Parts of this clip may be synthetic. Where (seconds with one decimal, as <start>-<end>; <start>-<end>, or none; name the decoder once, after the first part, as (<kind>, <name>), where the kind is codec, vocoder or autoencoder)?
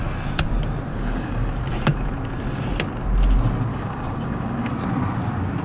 0.9-1.5 (codec, DAC); 3.7-4.7